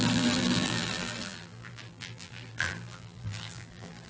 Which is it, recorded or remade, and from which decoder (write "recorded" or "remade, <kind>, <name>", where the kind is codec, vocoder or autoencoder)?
remade, vocoder, BigVGAN v2